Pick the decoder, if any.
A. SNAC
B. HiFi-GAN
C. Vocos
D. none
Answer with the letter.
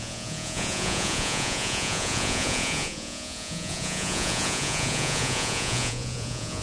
C